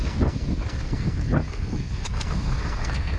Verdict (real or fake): fake